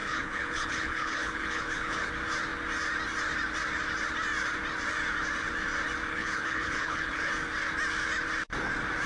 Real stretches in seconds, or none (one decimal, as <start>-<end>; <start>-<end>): 2.1-6.1; 7.3-9.1